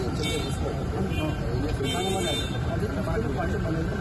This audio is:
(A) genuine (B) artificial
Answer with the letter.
A